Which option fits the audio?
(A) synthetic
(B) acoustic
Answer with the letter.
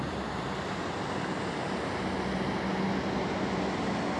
B